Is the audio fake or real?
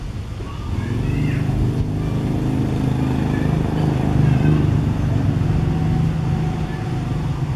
real